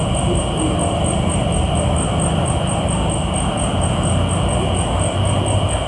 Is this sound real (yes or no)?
yes